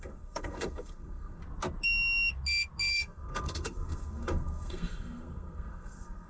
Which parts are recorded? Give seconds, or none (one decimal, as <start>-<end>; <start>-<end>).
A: 1.4-2.9